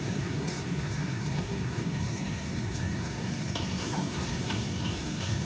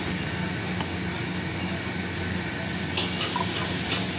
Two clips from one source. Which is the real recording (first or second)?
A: second